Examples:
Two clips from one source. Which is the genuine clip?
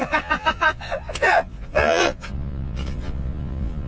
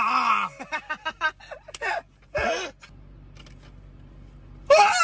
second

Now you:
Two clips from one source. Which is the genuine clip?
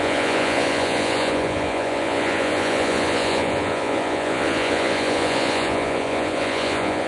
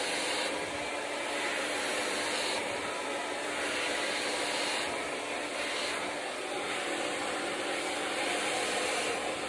second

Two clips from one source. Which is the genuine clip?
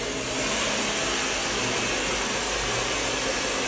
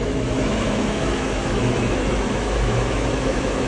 first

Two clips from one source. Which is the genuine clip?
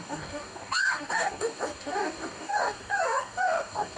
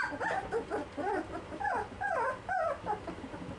second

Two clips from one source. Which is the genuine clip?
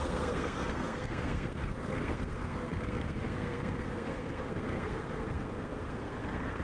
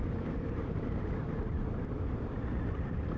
second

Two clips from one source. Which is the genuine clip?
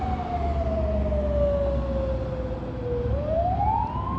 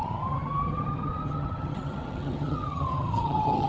first